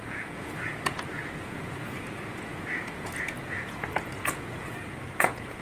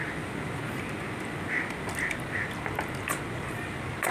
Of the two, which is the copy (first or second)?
first